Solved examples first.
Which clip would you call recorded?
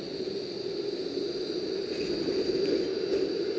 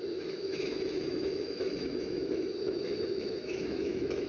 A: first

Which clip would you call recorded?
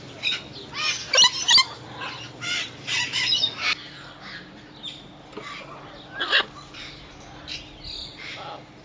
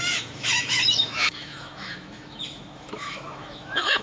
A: first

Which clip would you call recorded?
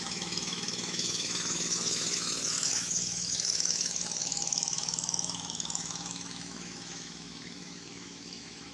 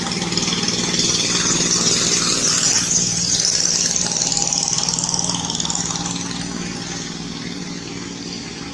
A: second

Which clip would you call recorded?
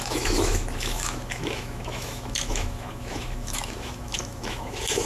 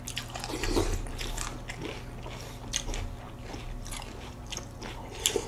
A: second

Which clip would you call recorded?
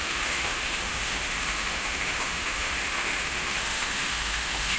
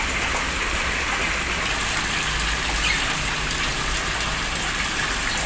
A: second